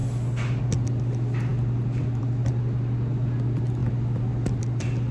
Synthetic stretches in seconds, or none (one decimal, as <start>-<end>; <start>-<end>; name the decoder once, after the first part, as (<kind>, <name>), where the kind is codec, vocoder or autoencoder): none